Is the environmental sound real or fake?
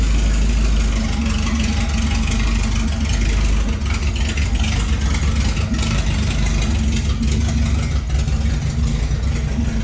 real